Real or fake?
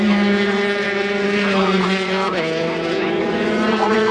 fake